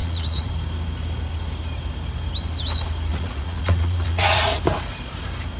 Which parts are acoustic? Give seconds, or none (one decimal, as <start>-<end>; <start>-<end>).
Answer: 0.5-3.1; 4.6-5.6